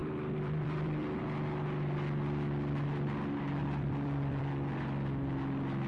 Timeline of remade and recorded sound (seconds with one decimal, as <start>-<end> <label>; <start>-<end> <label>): 0.0-1.2 remade; 1.2-3.6 recorded; 3.6-4.4 remade; 4.4-5.9 recorded